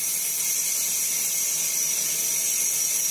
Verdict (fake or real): real